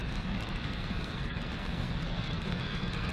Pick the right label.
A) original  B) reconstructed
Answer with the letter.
B